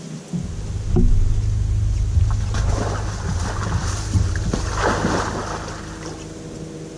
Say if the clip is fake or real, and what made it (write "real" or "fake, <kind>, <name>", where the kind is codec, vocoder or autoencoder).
real